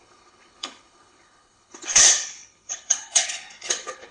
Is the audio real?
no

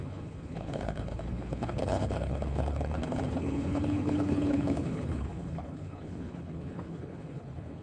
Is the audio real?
no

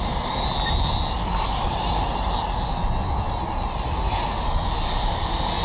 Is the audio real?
yes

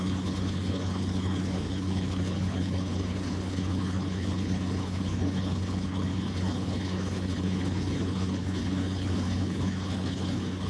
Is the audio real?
no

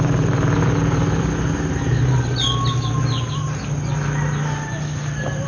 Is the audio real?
yes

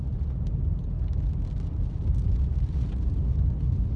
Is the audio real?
yes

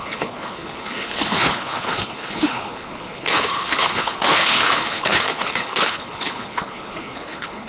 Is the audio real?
no